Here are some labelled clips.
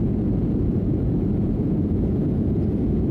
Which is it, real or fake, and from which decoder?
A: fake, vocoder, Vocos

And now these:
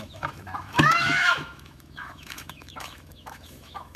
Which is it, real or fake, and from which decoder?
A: fake, autoencoder, DAC-VAE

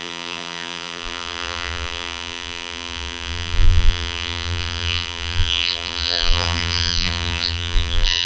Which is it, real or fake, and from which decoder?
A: fake, vocoder, BigVGAN v2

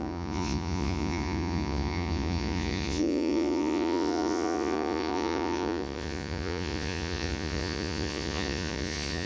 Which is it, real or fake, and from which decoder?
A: fake, vocoder, Vocos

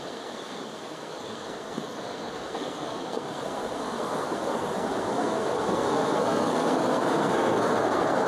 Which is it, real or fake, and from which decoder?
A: fake, codec, SNAC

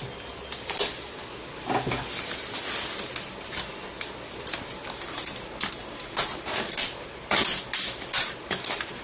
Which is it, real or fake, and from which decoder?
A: real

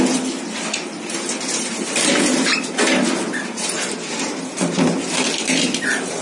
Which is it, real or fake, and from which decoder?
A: real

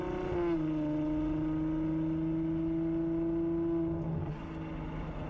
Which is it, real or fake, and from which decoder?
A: real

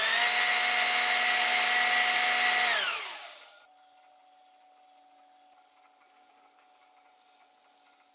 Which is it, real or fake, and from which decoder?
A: real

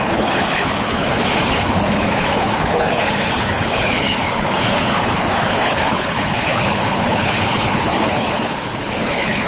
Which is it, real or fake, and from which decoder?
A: fake, codec, HILCodec